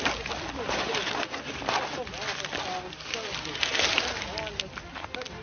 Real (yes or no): yes